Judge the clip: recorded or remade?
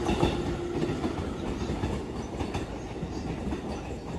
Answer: recorded